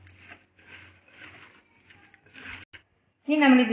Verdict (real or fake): real